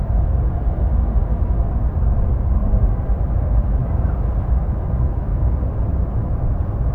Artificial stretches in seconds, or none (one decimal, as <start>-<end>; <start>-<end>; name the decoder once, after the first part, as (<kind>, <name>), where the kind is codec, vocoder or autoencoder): 2.6-3.4 (vocoder, BigVGAN v2); 3.8-4.5; 5.3-6.9